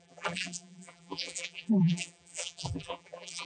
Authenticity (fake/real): fake